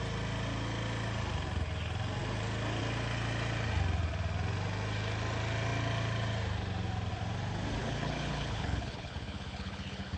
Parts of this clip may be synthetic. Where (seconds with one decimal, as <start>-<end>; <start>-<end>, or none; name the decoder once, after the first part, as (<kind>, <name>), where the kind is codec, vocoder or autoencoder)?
7.8-10.2 (codec, HILCodec)